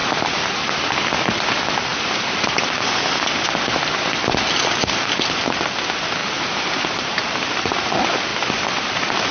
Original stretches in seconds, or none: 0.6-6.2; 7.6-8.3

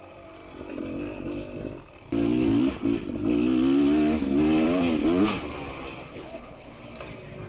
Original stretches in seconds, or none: 0.0-6.1; 6.8-7.5

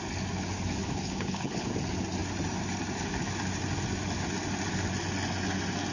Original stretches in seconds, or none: 0.0-0.8; 1.7-5.9

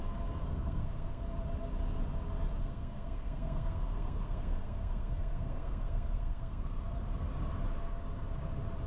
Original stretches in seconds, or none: 0.0-0.4; 1.2-2.6; 6.8-8.9

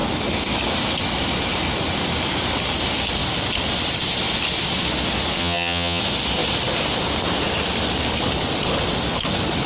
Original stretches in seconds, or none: 0.0-5.4; 6.0-9.7

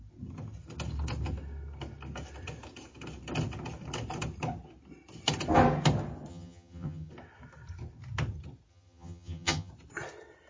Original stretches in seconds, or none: 0.0-6.3; 7.1-8.7; 9.7-10.5

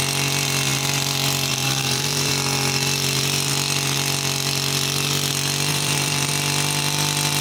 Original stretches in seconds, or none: 0.0-1.5; 2.3-5.7; 6.3-7.4